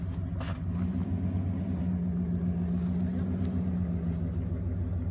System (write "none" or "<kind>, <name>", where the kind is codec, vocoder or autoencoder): none